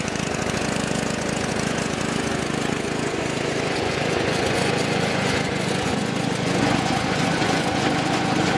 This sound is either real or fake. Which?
fake